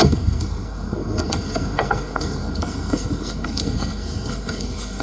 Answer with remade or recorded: remade